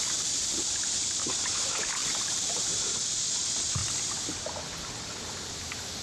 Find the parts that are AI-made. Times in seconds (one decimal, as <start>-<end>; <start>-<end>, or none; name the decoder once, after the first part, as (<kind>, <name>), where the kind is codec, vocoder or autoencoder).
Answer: 2.0-2.6 (vocoder, BigVGAN v2)

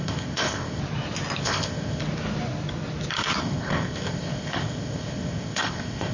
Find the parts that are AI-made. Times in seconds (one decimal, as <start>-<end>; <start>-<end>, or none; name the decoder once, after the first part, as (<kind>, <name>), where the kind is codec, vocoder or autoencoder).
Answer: 0.0-0.8 (codec, ZipCodec); 1.4-2.0; 3.4-6.1